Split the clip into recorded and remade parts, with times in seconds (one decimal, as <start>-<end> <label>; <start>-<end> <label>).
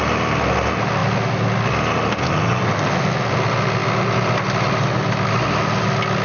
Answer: 0.0-6.2 recorded